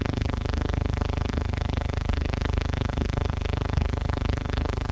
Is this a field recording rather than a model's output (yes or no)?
no